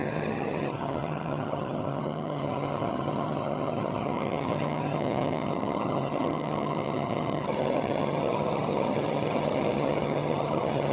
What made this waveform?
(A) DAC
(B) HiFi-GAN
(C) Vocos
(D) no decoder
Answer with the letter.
B